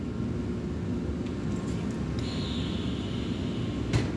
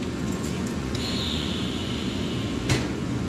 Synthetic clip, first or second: second